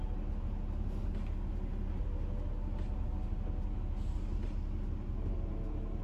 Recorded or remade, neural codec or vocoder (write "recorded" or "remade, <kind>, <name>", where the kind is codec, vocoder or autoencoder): recorded